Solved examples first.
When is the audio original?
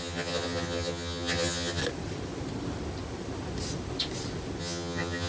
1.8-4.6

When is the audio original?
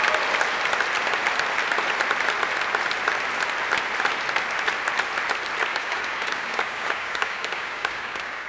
0.0-5.7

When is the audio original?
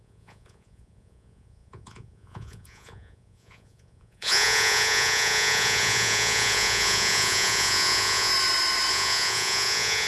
8.3-8.9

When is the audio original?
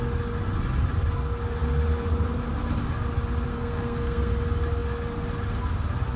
0.0-3.5; 4.3-6.2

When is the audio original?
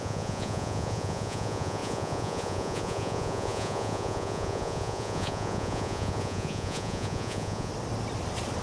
7.7-8.6